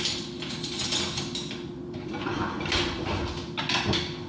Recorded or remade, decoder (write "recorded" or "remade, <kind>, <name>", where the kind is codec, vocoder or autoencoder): recorded